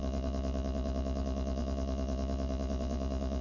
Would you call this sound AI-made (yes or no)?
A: yes